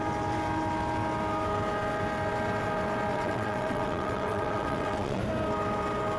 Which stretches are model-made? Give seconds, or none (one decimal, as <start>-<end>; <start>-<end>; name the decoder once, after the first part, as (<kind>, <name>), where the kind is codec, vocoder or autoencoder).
3.1-5.2 (vocoder, WaveNeXt)